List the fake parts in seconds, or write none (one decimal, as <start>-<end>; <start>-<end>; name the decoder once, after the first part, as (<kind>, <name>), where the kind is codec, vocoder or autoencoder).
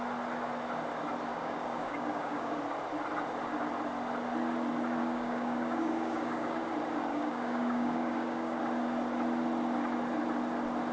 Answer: 1.3-2.6 (codec, DAC); 5.0-6.6; 7.1-8.6